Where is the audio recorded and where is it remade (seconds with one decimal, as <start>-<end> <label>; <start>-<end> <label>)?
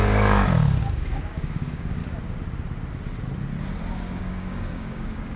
0.0-2.0 remade; 2.0-4.2 recorded; 4.2-5.4 remade